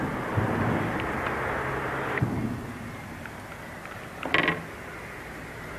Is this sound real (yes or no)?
yes